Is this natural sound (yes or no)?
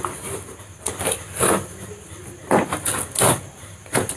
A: yes